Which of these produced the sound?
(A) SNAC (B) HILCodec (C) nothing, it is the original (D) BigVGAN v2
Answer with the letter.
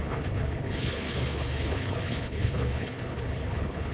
B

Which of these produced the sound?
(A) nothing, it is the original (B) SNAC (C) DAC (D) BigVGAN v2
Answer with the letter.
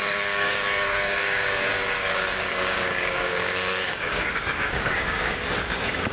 C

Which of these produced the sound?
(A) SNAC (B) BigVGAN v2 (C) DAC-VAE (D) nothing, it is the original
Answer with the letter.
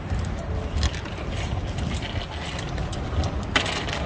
D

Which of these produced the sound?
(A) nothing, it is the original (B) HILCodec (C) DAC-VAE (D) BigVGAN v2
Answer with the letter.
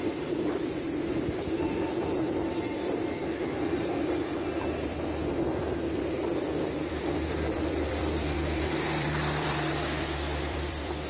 D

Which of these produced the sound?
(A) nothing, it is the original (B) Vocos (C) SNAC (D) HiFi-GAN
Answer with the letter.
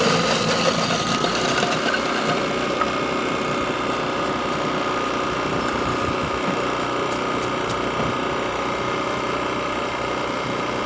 A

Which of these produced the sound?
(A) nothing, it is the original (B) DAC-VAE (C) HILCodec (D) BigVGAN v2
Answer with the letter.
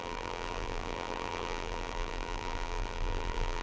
D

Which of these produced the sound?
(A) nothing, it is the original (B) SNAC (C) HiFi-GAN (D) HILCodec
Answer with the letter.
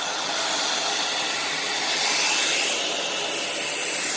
A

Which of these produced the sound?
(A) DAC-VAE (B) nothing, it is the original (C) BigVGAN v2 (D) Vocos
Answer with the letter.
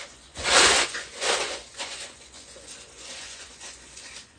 D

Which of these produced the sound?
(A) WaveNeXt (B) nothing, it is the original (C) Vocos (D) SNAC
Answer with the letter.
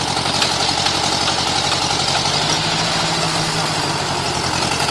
B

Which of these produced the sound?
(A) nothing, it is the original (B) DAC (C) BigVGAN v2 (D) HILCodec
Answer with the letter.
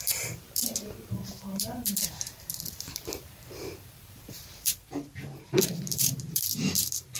C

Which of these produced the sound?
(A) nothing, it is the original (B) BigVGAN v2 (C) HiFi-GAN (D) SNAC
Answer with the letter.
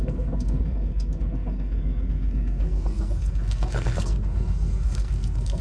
D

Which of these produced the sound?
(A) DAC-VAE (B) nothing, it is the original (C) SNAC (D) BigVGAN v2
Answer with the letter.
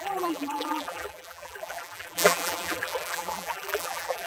D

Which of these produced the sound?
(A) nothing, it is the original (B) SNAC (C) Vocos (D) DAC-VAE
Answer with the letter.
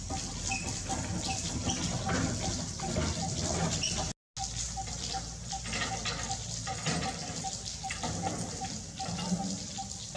A